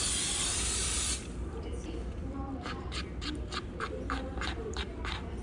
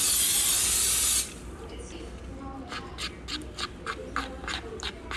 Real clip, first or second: second